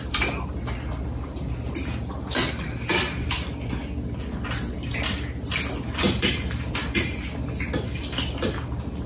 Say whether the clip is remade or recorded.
recorded